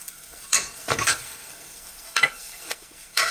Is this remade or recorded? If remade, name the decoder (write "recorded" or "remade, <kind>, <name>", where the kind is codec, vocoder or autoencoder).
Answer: remade, codec, SNAC